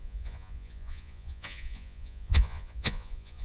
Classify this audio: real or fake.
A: fake